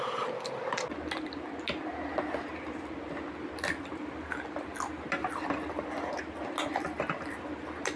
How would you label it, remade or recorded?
recorded